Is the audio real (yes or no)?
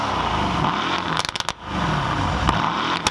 yes